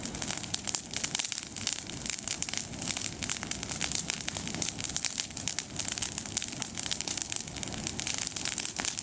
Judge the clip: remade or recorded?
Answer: recorded